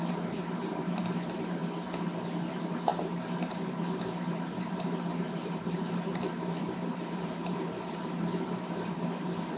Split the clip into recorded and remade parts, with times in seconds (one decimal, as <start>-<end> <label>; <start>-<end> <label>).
0.0-9.6 remade

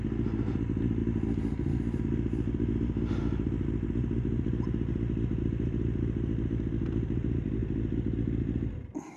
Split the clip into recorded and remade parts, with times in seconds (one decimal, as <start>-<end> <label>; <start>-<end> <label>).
0.0-9.2 recorded

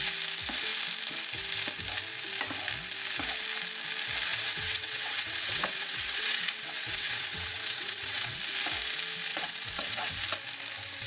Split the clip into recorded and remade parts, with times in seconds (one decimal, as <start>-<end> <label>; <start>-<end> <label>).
0.0-4.3 recorded; 4.3-8.4 remade; 8.4-9.3 recorded; 9.3-10.1 remade; 10.1-11.1 recorded

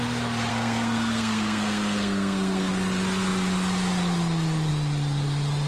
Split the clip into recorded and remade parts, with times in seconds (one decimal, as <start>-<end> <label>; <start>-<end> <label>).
0.0-0.5 recorded; 0.5-2.7 remade; 2.7-5.7 recorded

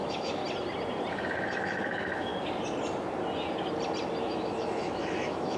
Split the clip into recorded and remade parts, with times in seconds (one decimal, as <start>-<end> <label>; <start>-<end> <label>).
0.0-0.4 remade; 0.4-1.1 recorded; 1.1-2.3 remade; 2.3-4.2 recorded; 4.2-5.6 remade

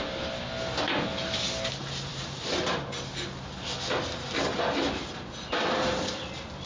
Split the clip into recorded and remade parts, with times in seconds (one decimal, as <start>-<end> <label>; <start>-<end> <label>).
0.0-2.1 recorded; 2.1-2.8 remade; 2.8-6.7 recorded

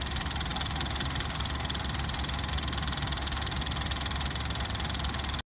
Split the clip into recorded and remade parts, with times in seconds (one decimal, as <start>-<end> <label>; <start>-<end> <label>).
0.0-5.5 recorded

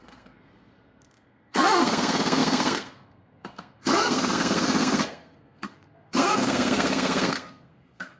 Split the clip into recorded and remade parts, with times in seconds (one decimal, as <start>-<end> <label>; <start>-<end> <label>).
0.0-8.2 remade